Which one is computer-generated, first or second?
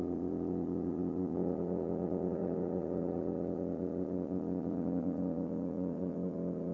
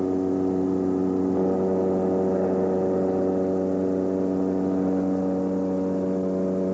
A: first